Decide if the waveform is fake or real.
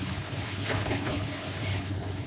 fake